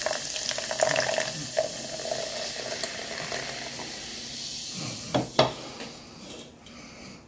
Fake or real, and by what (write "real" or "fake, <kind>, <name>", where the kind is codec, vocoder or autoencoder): real